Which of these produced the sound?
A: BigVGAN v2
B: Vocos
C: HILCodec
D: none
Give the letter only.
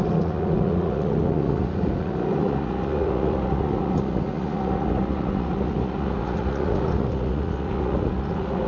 B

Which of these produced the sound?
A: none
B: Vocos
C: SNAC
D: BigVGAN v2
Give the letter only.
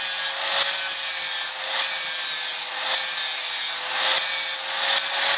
A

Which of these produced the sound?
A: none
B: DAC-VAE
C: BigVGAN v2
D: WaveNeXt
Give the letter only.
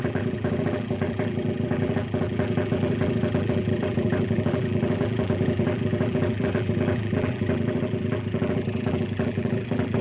C